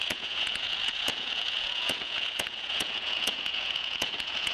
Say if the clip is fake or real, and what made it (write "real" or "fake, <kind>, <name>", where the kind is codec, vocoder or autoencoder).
fake, vocoder, Vocos